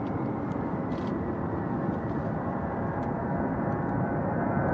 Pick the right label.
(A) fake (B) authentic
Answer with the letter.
A